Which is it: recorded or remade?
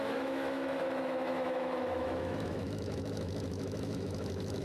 remade